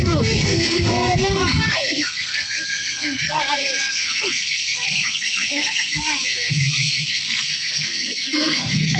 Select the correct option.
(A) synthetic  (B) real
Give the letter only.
A